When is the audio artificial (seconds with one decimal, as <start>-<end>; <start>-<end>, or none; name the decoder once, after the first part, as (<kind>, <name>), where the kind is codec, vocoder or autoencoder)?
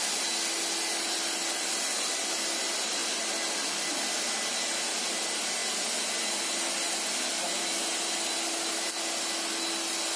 none